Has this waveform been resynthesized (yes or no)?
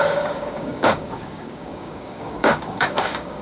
yes